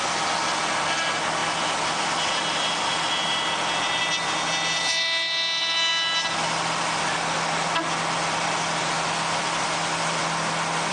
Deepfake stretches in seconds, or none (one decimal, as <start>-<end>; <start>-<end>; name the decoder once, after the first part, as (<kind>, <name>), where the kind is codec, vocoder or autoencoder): none